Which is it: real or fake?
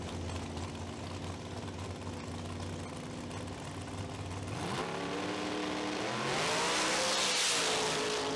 real